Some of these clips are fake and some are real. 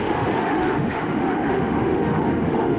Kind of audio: fake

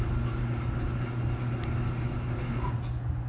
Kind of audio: real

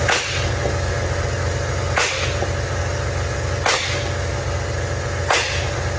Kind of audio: real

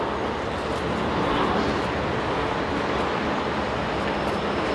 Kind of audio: real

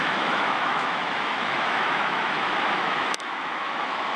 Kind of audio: fake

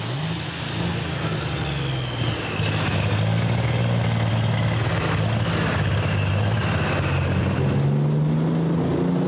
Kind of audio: real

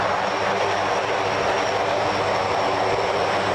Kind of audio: real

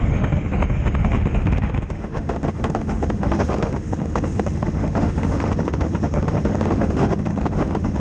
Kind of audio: fake